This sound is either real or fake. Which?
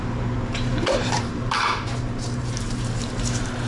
fake